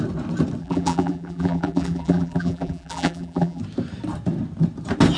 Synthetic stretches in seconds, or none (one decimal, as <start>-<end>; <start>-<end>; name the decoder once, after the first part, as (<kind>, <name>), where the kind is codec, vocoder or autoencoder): 0.6-3.6 (vocoder, BigVGAN v2)